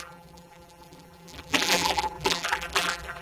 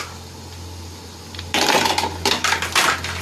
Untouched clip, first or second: second